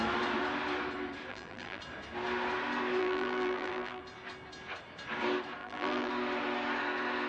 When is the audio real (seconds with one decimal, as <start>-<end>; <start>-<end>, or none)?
0.0-1.3; 1.8-3.0; 4.0-5.6; 6.1-7.3